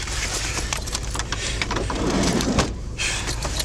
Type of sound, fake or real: fake